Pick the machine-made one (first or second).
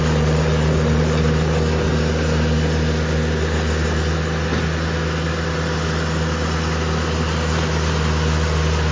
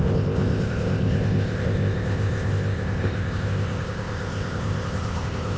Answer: second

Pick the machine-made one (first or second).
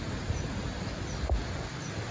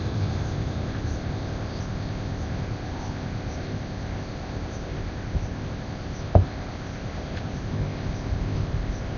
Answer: second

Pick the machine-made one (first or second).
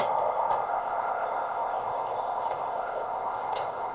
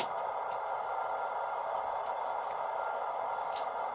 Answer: first